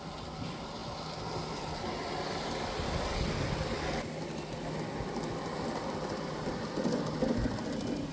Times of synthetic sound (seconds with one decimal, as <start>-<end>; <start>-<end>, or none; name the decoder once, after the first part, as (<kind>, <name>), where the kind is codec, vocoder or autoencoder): none